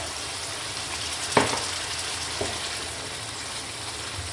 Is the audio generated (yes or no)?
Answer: no